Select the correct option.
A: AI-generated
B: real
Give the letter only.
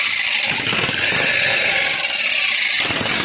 B